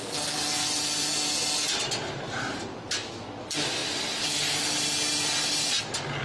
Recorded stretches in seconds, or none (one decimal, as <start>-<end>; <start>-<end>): 0.0-6.2